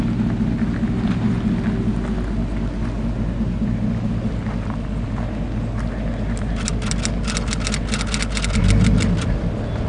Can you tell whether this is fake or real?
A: real